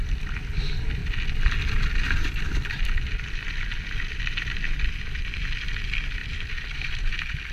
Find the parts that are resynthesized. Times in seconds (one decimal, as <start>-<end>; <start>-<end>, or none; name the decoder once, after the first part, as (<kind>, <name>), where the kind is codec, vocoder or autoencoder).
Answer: 0.0-1.0 (vocoder, BigVGAN v2); 5.2-6.2